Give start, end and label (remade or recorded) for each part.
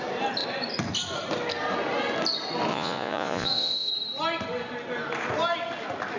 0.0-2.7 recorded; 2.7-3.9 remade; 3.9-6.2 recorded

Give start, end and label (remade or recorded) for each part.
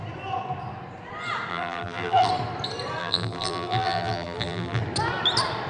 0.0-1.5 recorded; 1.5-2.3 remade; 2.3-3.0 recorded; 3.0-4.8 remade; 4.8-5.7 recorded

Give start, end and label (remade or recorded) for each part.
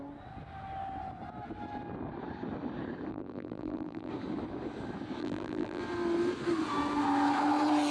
0.0-3.1 recorded; 3.1-4.1 remade; 4.1-5.2 recorded; 5.2-5.8 remade; 5.8-7.9 recorded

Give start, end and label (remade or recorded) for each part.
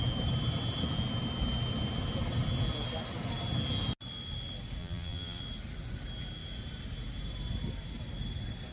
0.0-4.8 recorded; 4.8-5.4 remade; 5.4-8.7 recorded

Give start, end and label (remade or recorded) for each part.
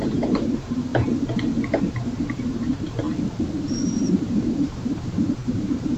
0.0-0.9 remade; 0.9-1.8 recorded; 1.8-3.1 remade; 3.1-4.0 recorded; 4.0-6.0 remade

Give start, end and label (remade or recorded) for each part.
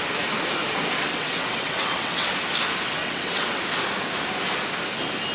0.0-1.1 recorded; 1.1-2.3 remade; 2.3-3.0 recorded; 3.0-3.6 remade; 3.6-5.3 recorded